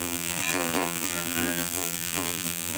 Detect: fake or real fake